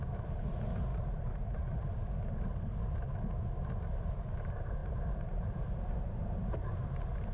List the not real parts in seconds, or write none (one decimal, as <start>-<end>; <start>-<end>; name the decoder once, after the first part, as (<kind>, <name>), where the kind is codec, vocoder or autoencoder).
none